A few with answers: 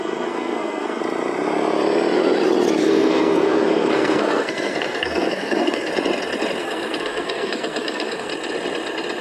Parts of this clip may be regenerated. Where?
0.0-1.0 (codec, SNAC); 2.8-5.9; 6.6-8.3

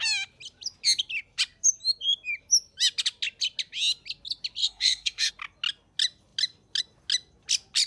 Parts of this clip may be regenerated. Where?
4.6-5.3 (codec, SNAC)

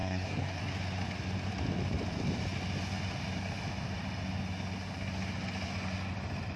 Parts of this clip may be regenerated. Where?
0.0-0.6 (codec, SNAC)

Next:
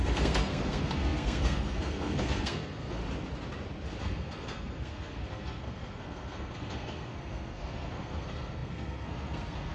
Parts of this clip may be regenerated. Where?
0.0-3.0 (codec, SNAC); 4.0-9.7

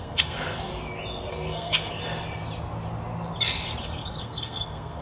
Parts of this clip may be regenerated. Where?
0.0-0.7 (codec, SNAC); 1.3-2.0; 3.8-5.0